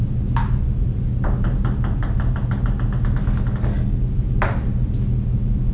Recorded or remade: recorded